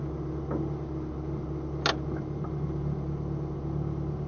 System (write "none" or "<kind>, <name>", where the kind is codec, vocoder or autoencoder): none